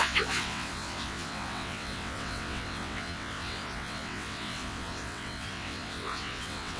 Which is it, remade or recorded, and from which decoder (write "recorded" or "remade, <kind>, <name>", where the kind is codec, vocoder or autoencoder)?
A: remade, vocoder, WaveNeXt